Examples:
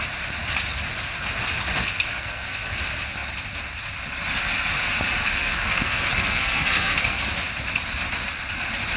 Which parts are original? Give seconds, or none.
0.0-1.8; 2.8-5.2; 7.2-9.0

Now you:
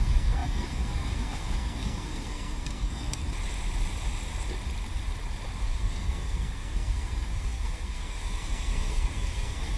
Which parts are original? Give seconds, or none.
3.2-5.6

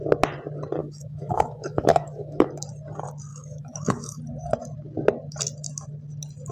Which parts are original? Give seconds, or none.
0.0-0.8; 2.5-3.3; 4.2-6.5

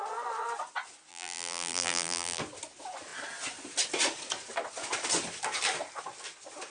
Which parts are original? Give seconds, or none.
0.0-1.1; 2.4-6.7

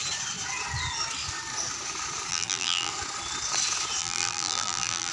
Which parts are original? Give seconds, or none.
0.0-2.3; 2.9-4.0